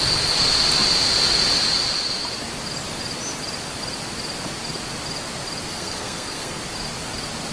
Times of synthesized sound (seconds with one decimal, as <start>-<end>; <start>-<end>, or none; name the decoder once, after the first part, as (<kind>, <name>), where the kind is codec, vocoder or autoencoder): 5.7-6.6 (codec, SNAC)